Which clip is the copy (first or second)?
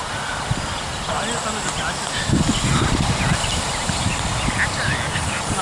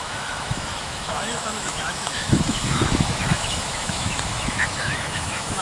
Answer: second